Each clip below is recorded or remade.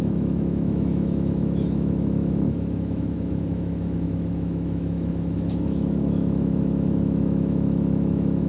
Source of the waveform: remade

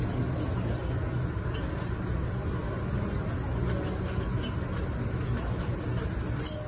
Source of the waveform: recorded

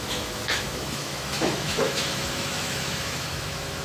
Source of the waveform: remade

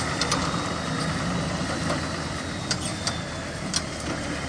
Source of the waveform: recorded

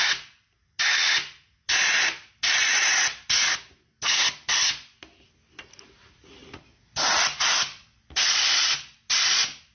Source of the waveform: recorded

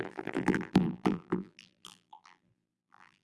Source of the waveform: remade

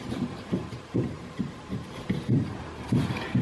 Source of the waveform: remade